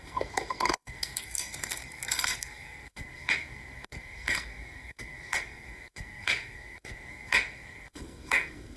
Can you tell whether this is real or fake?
fake